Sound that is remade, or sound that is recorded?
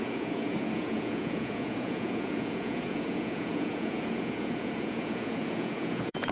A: remade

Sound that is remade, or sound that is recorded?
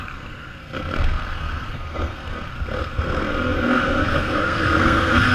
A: remade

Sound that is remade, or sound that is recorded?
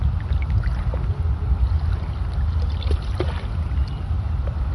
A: recorded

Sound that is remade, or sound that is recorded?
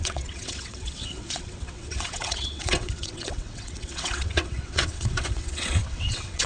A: remade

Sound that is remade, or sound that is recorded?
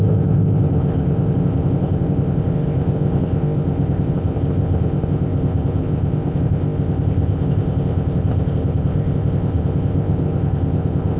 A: remade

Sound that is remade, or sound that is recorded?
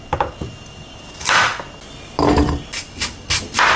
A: recorded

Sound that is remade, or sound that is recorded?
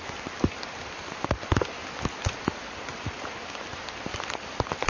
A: recorded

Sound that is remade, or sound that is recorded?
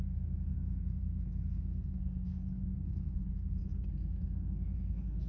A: remade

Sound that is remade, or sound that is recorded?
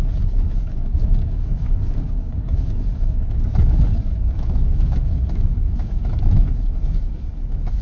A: remade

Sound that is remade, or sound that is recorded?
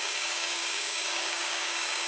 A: remade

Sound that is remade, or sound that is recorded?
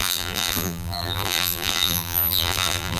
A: remade